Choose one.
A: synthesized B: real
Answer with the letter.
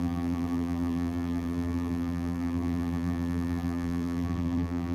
A